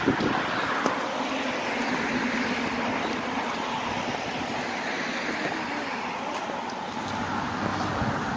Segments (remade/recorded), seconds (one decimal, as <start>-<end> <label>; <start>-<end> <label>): 0.0-8.4 recorded